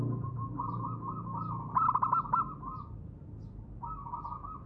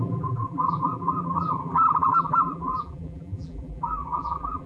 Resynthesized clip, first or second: second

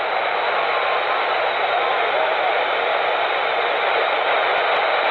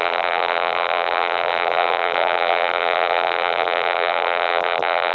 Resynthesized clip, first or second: second